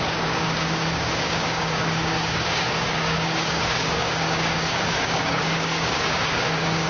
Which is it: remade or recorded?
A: remade